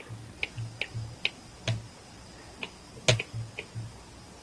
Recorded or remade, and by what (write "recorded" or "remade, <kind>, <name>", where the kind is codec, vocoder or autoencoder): recorded